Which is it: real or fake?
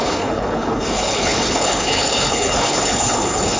fake